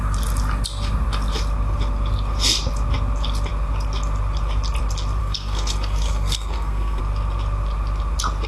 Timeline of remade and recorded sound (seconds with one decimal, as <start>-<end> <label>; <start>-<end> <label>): 0.0-5.2 recorded; 5.2-7.0 remade; 7.0-8.5 recorded